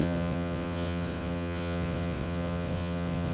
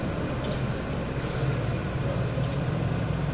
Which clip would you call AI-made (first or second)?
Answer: first